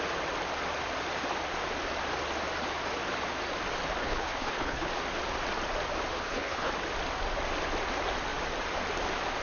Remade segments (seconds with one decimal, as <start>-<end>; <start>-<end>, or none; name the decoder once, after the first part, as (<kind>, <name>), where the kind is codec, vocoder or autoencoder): 4.0-4.9 (codec, HILCodec); 6.1-6.7